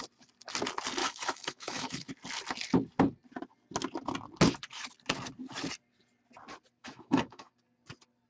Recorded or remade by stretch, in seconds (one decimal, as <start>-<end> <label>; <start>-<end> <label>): 0.0-1.0 recorded; 1.0-2.1 remade; 2.1-6.8 recorded; 6.8-7.5 remade; 7.5-8.3 recorded